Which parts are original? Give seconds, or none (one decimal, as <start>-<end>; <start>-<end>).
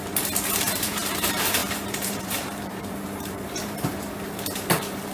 0.0-0.6